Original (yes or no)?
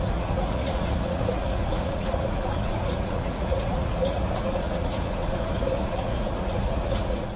no